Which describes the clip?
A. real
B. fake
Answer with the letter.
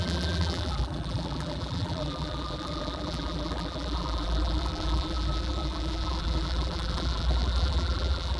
B